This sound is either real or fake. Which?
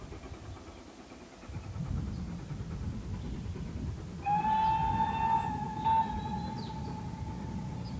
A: real